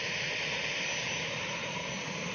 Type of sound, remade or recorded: recorded